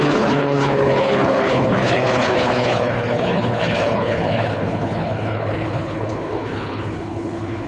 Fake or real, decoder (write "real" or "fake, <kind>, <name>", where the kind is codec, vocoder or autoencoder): fake, codec, HILCodec